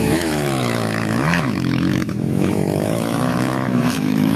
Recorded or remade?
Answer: remade